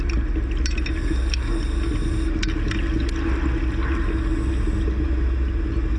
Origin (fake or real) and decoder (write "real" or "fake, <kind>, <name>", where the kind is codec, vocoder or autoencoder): real